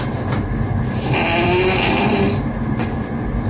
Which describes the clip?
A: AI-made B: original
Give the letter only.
B